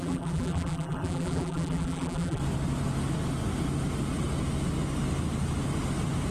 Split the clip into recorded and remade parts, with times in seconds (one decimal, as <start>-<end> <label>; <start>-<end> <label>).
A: 0.0-2.4 remade; 2.4-6.3 recorded